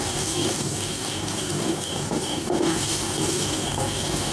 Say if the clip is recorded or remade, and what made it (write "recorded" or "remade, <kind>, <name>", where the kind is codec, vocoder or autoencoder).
remade, codec, DAC